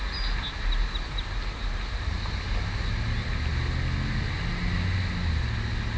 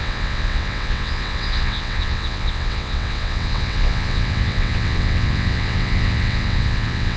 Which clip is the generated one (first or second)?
second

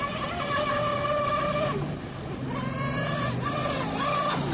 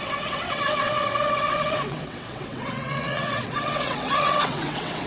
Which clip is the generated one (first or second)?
second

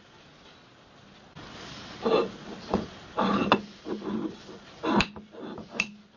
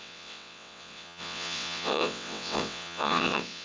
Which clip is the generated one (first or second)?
second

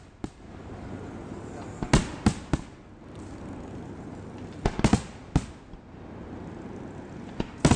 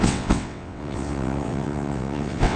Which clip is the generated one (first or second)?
second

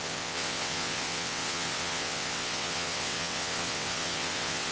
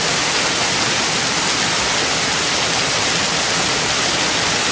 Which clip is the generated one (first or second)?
first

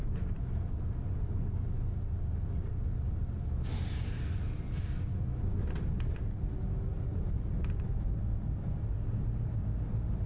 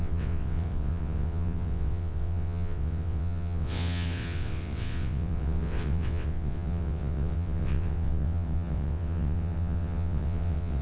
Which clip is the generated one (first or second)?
second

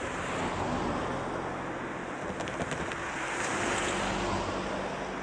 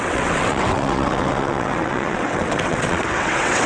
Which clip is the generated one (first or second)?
second